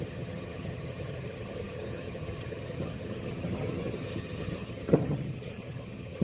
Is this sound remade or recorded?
remade